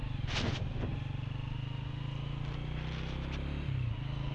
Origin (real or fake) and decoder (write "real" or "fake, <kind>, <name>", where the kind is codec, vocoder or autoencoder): real